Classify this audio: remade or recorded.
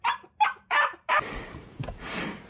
remade